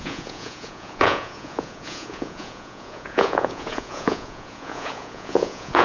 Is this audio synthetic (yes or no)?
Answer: yes